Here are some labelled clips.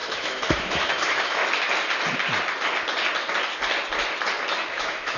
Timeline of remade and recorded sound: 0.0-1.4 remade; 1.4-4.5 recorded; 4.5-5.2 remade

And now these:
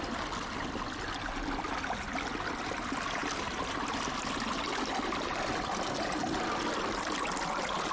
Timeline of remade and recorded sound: 0.0-7.9 recorded